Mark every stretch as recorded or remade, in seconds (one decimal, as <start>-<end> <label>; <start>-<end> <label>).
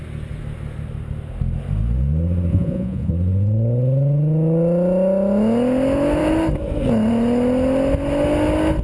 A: 0.0-2.5 recorded; 2.5-3.1 remade; 3.1-8.8 recorded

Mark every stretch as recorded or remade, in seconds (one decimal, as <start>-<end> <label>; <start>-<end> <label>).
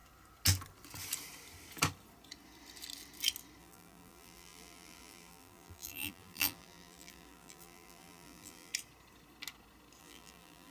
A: 0.0-3.6 recorded; 3.6-8.7 remade; 8.7-10.0 recorded; 10.0-10.7 remade